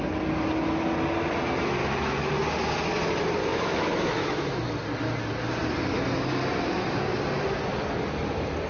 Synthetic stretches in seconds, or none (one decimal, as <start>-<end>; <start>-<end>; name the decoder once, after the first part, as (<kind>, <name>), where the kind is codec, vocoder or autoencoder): 1.8-2.3 (autoencoder, DAC-VAE); 3.5-4.6